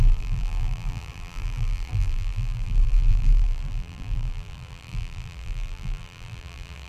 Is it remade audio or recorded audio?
remade